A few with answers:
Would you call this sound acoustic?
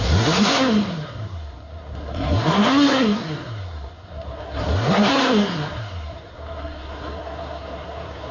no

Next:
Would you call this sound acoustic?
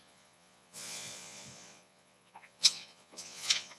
no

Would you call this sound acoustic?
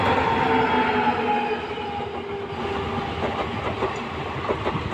yes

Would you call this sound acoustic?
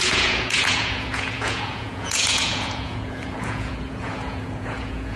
no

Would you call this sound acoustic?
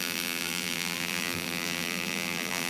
no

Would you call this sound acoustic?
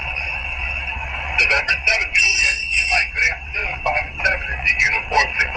no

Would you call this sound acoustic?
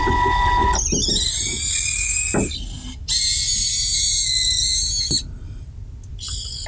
yes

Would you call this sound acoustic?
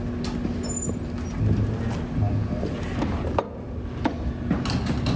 yes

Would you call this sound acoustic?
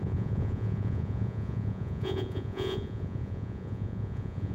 no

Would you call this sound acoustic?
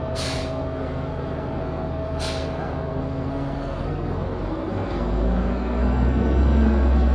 no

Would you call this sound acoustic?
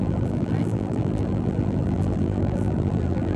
no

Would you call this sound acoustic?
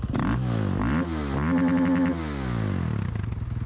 yes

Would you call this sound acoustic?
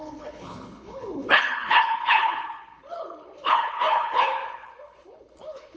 no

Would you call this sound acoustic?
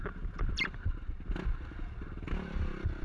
yes